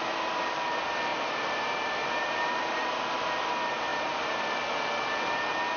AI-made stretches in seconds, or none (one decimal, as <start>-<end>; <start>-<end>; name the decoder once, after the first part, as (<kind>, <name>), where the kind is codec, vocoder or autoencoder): 1.1-2.9 (vocoder, BigVGAN v2); 3.9-4.4